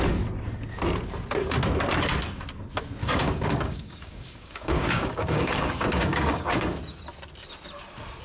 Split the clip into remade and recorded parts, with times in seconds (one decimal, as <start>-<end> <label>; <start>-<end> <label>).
0.0-3.0 recorded; 3.0-6.8 remade; 6.8-8.2 recorded